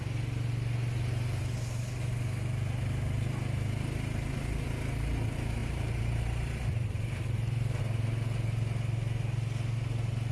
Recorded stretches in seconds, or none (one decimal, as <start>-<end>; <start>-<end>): 0.0-5.6; 7.8-10.3